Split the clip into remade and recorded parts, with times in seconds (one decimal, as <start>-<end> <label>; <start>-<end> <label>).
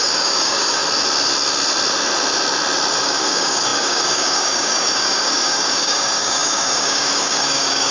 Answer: 0.0-0.8 remade; 0.8-3.0 recorded; 3.0-7.9 remade